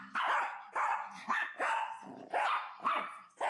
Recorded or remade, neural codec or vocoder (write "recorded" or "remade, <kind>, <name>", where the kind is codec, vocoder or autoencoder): recorded